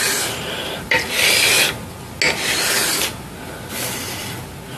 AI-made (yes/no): no